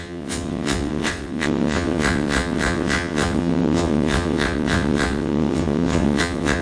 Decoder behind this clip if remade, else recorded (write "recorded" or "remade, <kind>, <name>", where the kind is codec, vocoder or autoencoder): remade, vocoder, WaveNeXt